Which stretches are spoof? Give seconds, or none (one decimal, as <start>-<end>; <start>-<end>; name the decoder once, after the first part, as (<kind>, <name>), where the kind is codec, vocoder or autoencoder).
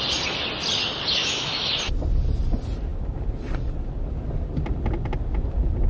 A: 1.2-1.8 (autoencoder, DAC-VAE)